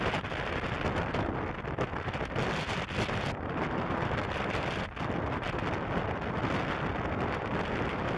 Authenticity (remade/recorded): recorded